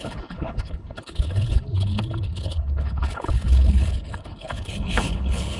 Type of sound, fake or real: fake